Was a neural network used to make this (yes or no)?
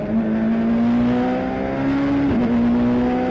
no